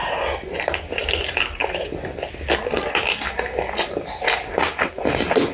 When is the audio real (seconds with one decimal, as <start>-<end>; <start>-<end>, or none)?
0.0-5.5